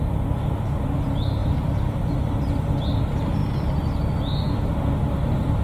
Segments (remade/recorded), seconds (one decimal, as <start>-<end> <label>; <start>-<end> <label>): 0.0-5.6 recorded